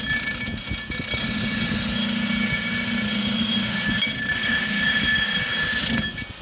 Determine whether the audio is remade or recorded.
recorded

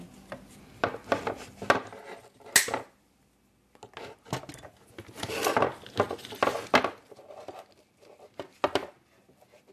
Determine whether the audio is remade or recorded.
recorded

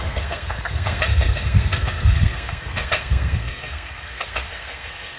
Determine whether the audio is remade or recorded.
remade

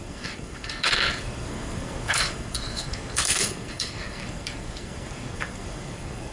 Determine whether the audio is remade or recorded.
remade